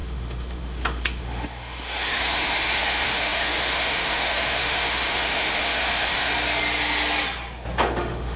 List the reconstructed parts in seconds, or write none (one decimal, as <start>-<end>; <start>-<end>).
0.0-6.3; 7.8-8.4